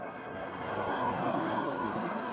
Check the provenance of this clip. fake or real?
fake